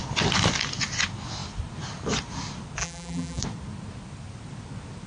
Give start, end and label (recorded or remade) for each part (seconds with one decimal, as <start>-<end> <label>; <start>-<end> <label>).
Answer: 0.0-2.8 recorded; 2.8-3.4 remade; 3.4-5.1 recorded